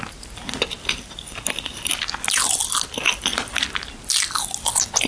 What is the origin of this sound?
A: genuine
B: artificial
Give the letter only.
A